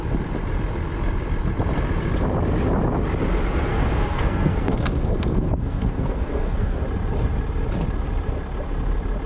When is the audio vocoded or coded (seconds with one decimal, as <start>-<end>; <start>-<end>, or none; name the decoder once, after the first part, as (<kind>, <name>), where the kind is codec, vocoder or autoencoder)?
3.7-6.8 (codec, SNAC)